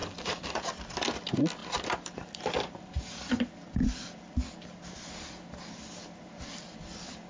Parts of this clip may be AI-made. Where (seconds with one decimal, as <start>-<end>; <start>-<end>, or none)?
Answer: 0.0-0.8; 1.6-3.5